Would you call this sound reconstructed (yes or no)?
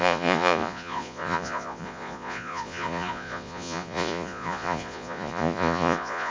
yes